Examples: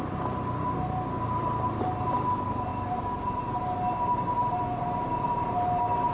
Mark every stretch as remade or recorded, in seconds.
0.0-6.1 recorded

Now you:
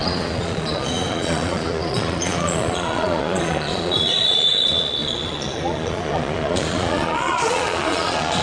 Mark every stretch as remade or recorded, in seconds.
0.0-8.4 remade

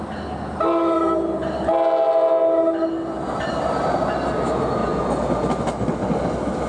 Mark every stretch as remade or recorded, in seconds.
0.0-6.7 recorded

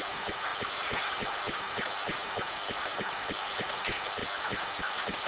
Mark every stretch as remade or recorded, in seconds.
0.0-5.3 recorded

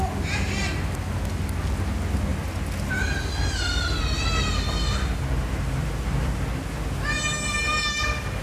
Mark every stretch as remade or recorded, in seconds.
0.0-8.4 recorded